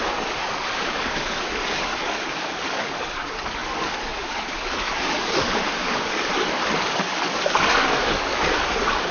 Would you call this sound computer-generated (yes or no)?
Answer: yes